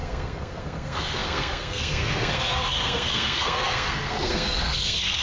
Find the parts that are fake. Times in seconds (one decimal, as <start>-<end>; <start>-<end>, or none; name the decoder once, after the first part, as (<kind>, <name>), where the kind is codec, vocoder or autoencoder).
0.0-5.2 (codec, SNAC)